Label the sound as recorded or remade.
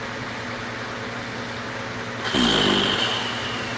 recorded